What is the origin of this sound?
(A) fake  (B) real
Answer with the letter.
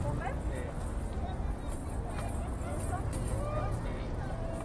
B